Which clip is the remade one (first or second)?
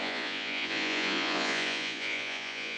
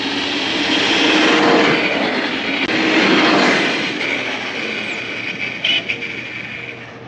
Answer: first